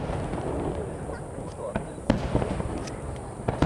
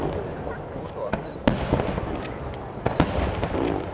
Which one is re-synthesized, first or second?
first